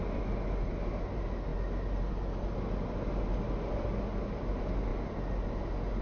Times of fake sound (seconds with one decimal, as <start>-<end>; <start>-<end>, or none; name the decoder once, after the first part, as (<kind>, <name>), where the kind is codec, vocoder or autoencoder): none